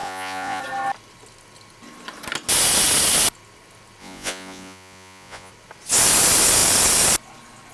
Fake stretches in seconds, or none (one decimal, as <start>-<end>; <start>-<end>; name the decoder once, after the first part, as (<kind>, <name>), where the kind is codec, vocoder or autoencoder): 0.0-0.6 (vocoder, Vocos); 4.0-5.5